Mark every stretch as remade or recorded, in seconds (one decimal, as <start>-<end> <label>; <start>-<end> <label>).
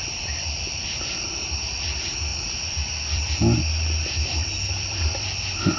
0.0-5.8 remade